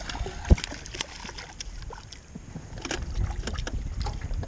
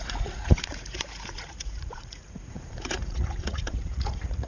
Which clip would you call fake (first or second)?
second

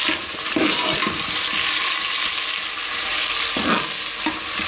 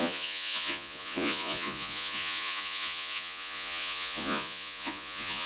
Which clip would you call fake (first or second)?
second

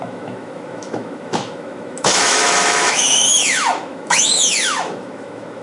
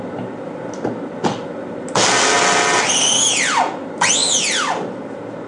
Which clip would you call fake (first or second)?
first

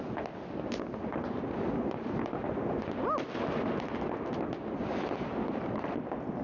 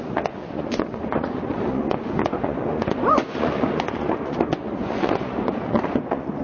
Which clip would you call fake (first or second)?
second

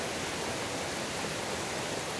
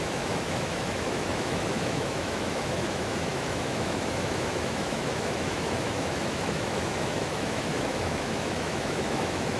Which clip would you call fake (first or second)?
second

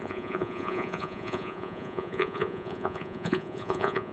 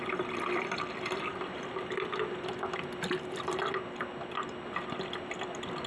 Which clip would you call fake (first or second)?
first